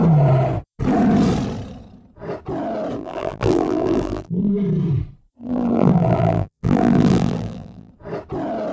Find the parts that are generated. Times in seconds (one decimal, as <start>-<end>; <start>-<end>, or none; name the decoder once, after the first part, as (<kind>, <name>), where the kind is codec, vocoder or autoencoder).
3.0-4.5 (vocoder, BigVGAN v2); 5.4-7.9